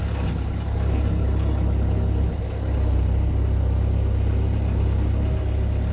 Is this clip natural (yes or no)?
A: yes